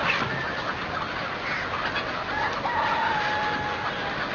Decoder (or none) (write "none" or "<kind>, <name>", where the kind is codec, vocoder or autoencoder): none